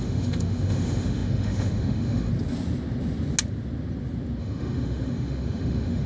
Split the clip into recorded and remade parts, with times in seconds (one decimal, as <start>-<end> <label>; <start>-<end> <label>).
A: 0.0-2.3 remade; 2.3-4.4 recorded; 4.4-6.1 remade